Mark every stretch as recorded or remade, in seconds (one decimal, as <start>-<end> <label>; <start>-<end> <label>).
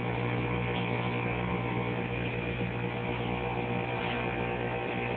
0.0-5.2 recorded